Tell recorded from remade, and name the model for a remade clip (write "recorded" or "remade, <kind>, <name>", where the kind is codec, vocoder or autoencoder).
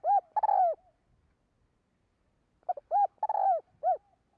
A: recorded